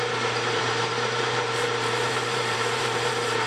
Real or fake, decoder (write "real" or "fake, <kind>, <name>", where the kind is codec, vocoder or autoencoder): fake, vocoder, BigVGAN v2